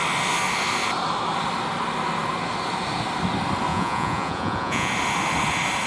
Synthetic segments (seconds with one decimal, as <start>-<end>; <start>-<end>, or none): 3.7-4.9